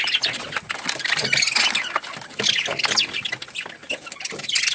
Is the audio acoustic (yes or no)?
yes